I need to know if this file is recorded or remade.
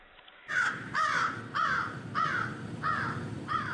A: remade